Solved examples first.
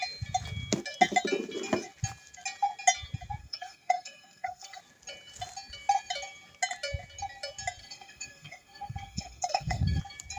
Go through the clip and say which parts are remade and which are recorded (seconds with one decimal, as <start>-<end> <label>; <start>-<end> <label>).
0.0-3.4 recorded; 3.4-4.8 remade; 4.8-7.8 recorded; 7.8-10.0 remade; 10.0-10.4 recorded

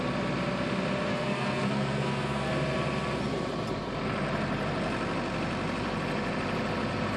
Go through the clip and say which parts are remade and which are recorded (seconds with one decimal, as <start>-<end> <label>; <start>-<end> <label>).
0.0-1.1 recorded; 1.1-2.5 remade; 2.5-7.2 recorded

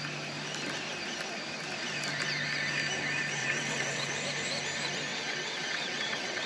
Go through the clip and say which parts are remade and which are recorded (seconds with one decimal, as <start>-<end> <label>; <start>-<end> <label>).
0.0-3.4 recorded; 3.4-4.1 remade; 4.1-5.1 recorded; 5.1-6.5 remade

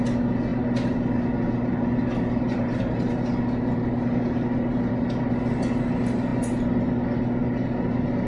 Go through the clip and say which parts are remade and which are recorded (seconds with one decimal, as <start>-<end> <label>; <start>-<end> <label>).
0.0-8.3 recorded

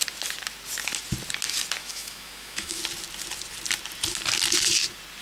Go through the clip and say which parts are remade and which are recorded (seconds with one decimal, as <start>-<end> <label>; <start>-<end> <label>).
0.0-1.8 recorded; 1.8-2.8 remade; 2.8-5.2 recorded

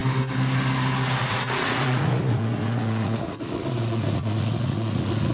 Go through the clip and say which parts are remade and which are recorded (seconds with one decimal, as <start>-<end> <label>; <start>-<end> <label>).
0.0-1.2 recorded; 1.2-5.3 remade